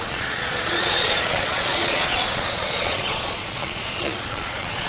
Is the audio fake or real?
fake